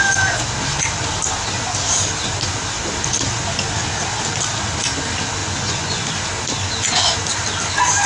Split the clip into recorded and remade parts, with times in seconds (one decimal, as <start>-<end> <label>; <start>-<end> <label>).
0.0-5.4 recorded; 5.4-6.1 remade; 6.1-8.1 recorded